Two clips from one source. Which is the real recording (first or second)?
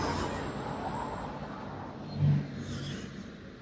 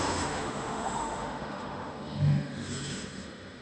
first